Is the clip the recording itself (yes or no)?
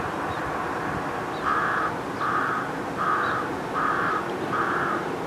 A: yes